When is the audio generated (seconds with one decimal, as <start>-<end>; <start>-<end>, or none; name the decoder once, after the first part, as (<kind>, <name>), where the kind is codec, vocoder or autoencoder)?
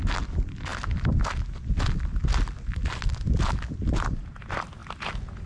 none